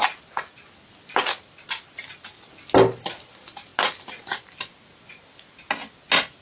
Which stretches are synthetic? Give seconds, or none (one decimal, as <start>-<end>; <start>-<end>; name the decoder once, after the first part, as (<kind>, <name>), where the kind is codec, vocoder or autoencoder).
none